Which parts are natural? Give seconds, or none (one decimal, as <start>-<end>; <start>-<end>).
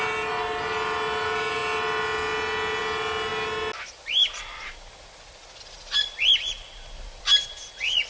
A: 0.0-8.1